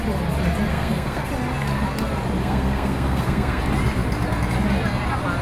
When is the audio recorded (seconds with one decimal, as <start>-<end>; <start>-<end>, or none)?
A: 0.0-0.7; 1.3-2.4; 3.6-5.4